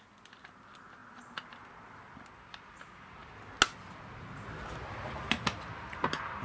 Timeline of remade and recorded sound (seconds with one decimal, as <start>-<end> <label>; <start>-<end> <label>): 0.0-6.4 recorded

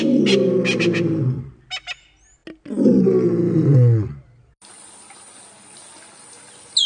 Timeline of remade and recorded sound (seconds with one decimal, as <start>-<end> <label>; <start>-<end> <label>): 0.0-6.9 recorded

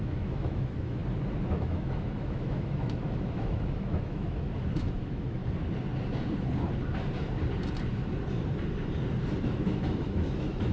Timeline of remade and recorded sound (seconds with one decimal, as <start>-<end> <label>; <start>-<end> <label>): 0.0-1.0 remade; 1.0-1.5 recorded; 1.5-5.4 remade; 5.4-9.4 recorded; 9.4-10.7 remade

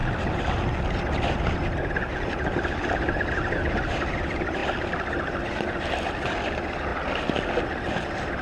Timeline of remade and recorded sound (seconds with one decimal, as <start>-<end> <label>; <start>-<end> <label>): 0.0-8.4 recorded